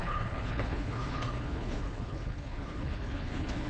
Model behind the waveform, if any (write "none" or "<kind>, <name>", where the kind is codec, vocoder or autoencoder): codec, HILCodec